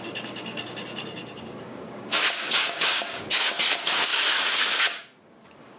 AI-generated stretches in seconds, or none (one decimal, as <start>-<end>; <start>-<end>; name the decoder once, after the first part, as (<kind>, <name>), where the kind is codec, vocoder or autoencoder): 0.0-5.8 (codec, DAC)